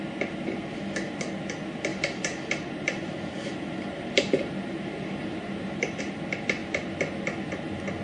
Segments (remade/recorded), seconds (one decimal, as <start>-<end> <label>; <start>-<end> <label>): 0.0-1.9 recorded; 1.9-6.0 remade; 6.0-8.0 recorded